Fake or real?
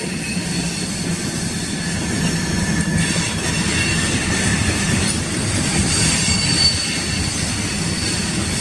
real